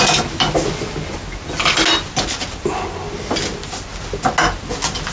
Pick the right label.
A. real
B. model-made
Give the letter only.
A